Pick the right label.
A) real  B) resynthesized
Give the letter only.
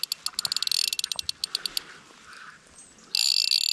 A